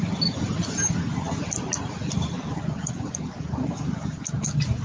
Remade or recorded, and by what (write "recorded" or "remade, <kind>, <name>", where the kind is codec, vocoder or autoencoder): recorded